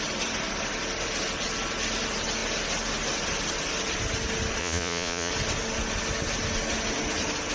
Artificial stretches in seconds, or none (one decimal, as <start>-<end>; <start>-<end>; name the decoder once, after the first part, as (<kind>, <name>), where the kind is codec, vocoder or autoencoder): 4.6-5.3 (vocoder, Vocos)